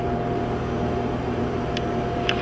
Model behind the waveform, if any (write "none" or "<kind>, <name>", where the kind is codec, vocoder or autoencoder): none